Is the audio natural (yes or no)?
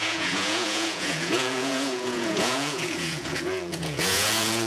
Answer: no